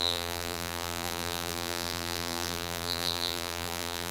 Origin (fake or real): fake